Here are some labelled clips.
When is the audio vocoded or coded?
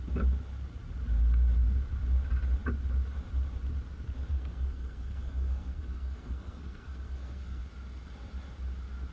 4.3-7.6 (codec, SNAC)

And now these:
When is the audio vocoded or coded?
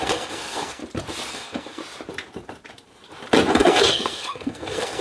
0.0-0.8 (codec, SNAC); 1.3-1.8; 3.5-5.0